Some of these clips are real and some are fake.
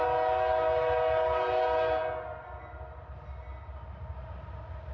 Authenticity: real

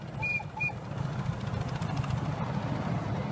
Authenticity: real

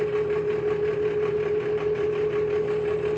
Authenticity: real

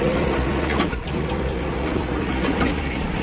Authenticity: fake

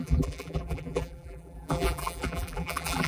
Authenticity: fake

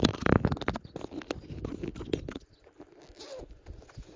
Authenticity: real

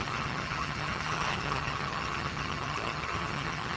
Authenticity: fake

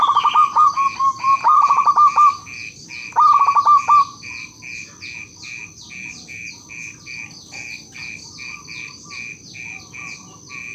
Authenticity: real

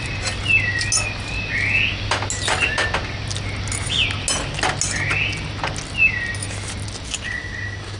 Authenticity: real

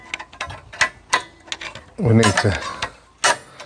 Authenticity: real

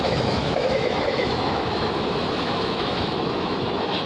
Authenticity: fake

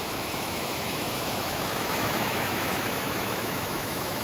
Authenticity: fake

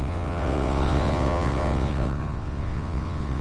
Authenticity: fake